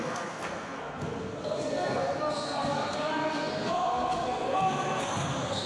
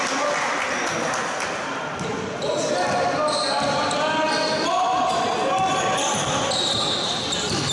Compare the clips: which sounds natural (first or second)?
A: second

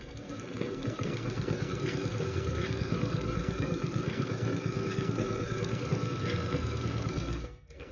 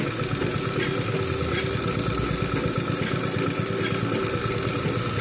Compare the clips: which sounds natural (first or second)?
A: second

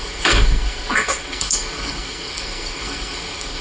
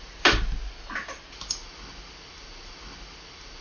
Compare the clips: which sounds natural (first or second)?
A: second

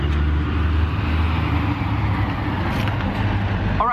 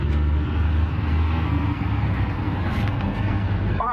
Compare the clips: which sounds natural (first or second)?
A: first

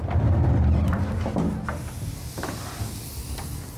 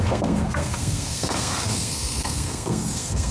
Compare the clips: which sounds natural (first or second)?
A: first